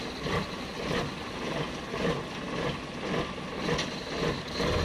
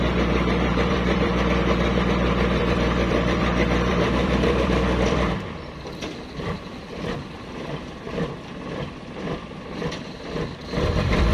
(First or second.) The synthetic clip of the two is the second